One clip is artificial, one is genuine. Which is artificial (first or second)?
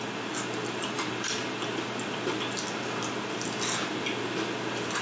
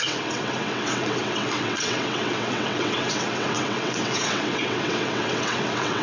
second